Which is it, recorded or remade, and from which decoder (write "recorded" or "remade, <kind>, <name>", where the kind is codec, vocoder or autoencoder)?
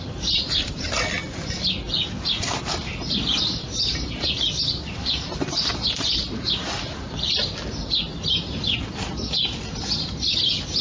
recorded